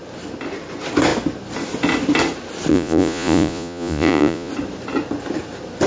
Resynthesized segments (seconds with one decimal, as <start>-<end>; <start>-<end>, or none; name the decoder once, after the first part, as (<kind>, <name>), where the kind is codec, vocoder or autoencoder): 2.7-4.5 (vocoder, Vocos)